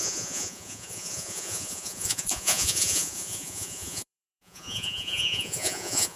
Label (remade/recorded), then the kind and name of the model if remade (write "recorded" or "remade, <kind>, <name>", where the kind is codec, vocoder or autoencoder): remade, vocoder, Vocos